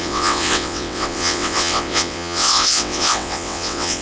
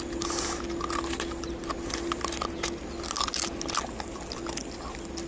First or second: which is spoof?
first